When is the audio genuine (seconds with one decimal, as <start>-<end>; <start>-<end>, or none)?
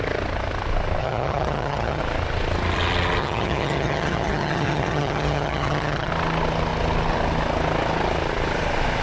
0.0-1.0; 2.0-3.2; 6.1-9.0